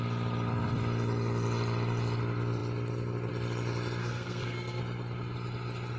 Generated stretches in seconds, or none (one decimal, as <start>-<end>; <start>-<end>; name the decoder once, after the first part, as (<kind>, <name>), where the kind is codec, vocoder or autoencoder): 4.0-4.8 (codec, SNAC)